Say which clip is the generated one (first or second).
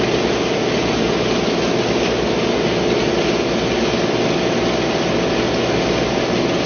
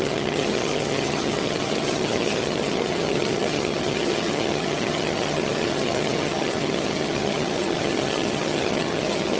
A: second